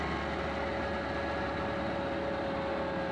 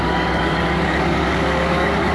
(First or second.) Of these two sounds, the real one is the first